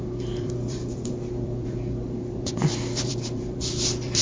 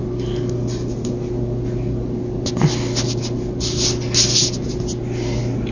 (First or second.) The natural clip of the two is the second